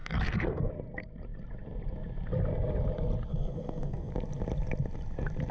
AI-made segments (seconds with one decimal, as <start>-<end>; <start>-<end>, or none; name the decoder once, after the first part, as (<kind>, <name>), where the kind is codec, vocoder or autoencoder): 0.0-0.7 (codec, SNAC); 3.3-4.1